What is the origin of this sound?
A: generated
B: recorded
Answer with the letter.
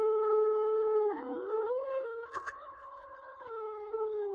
A